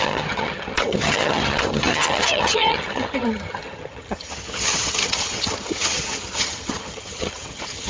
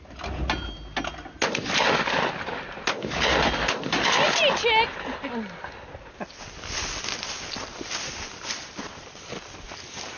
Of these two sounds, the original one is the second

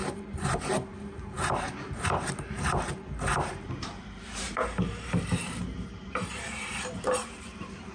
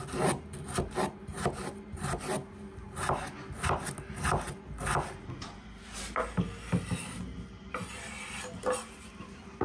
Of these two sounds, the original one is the second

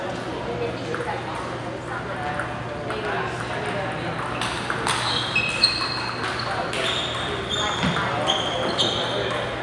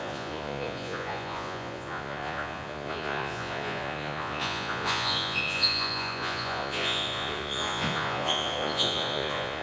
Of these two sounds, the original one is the first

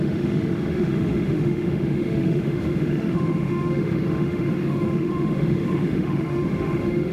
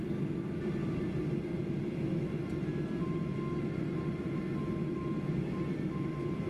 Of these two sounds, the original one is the second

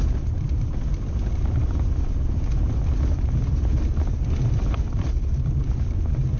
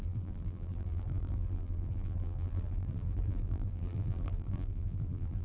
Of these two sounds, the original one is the first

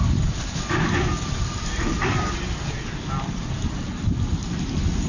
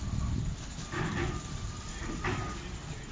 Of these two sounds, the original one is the second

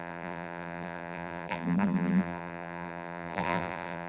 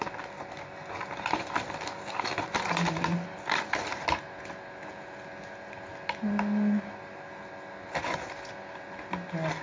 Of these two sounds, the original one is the second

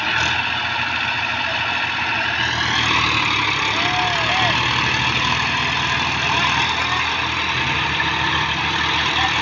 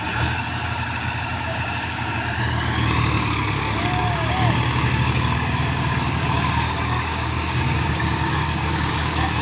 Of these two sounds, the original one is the first